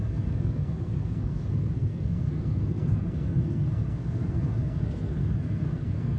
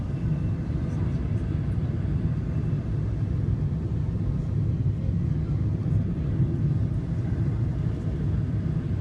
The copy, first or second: first